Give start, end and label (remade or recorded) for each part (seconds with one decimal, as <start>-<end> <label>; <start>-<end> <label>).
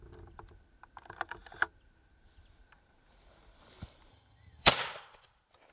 0.0-4.1 recorded; 4.1-4.7 remade; 4.7-5.7 recorded